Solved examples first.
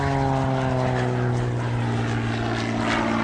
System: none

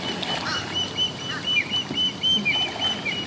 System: none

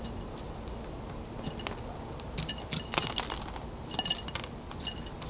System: none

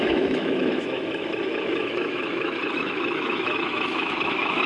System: autoencoder, DAC-VAE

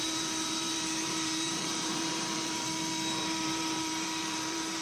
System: vocoder, BigVGAN v2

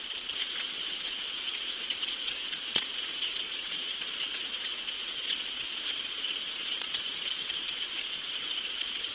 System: vocoder, Vocos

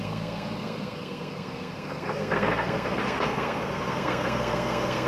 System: codec, SNAC